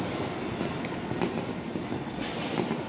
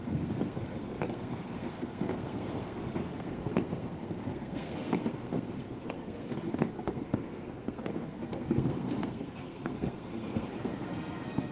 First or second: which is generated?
second